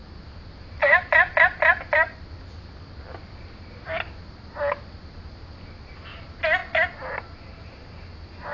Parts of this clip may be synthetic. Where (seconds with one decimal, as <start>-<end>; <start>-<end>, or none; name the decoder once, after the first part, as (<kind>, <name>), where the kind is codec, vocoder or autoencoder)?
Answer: none